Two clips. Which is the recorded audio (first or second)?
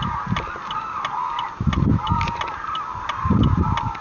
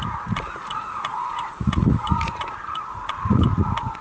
first